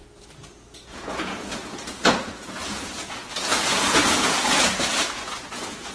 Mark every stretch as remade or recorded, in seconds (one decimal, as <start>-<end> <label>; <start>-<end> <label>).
0.0-5.9 remade